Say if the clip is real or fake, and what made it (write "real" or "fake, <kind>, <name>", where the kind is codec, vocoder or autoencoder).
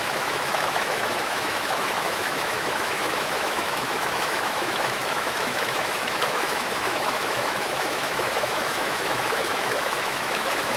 fake, autoencoder, DAC-VAE